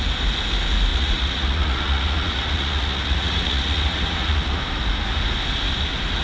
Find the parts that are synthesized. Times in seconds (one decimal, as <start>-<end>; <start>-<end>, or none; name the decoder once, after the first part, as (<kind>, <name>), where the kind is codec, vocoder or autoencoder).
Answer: 0.9-4.6 (vocoder, Vocos)